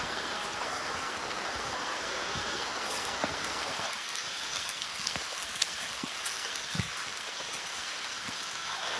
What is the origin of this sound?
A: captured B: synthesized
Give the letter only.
B